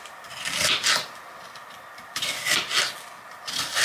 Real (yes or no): yes